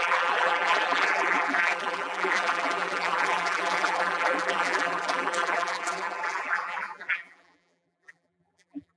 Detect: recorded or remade remade